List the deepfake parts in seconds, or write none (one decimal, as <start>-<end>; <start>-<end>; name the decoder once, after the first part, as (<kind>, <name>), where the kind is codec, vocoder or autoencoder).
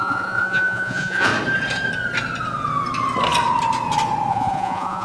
0.0-1.3 (vocoder, Vocos); 4.3-5.0